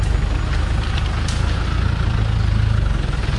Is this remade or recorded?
recorded